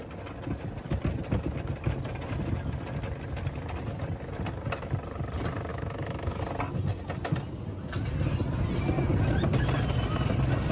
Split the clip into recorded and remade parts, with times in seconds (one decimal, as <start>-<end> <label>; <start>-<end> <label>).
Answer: 0.0-5.7 recorded; 5.7-6.4 remade; 6.4-10.7 recorded